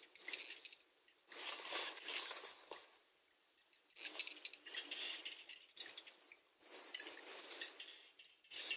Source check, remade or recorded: recorded